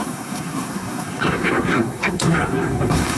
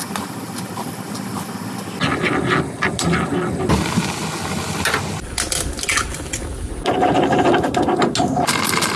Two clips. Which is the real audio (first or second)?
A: second